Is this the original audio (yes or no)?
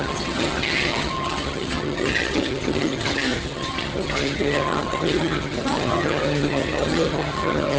no